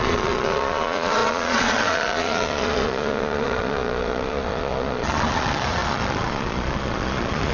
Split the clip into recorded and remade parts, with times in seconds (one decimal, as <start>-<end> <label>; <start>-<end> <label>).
0.0-7.5 remade